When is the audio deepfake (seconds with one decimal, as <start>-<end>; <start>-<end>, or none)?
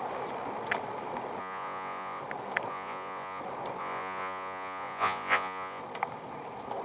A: 1.4-2.2; 2.7-3.4; 3.8-5.8